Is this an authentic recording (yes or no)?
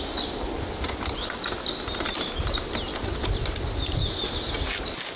yes